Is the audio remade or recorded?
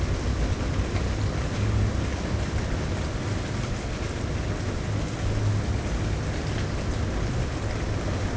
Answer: recorded